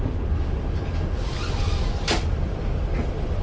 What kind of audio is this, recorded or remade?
recorded